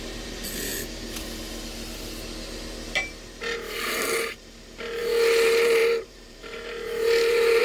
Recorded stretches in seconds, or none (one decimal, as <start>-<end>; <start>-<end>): 0.7-5.0